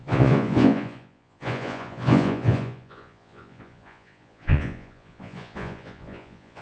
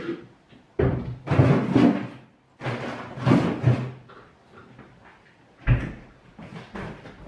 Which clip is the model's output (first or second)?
first